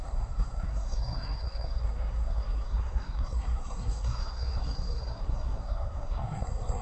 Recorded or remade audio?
remade